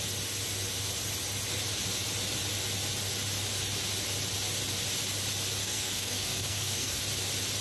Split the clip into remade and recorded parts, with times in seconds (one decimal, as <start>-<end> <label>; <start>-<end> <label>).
0.0-5.6 recorded; 5.6-7.0 remade; 7.0-7.6 recorded

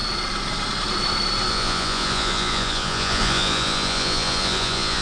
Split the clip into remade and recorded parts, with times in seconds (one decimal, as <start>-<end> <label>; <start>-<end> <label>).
0.0-1.5 recorded; 1.5-5.0 remade

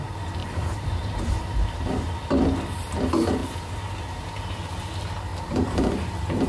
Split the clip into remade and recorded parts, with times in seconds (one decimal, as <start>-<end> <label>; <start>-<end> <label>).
0.0-0.4 recorded; 0.4-1.9 remade; 1.9-5.3 recorded; 5.3-5.9 remade; 5.9-6.5 recorded

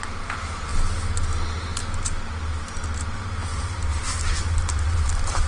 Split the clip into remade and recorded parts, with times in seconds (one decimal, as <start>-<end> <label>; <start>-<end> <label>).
0.0-3.5 recorded; 3.5-5.5 remade